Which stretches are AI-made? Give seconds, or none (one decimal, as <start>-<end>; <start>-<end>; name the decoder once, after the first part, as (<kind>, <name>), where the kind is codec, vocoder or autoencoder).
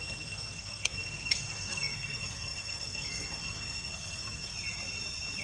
0.0-4.5 (codec, SNAC)